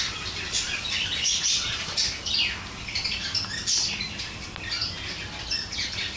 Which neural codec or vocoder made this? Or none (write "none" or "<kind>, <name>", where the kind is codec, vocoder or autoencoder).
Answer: none